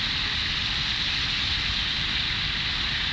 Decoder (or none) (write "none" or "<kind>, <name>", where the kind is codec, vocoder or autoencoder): none